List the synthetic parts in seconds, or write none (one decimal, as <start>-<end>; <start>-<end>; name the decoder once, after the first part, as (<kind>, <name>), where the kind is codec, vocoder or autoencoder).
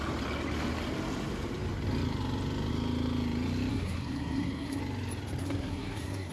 3.7-4.8 (codec, SNAC); 5.4-6.3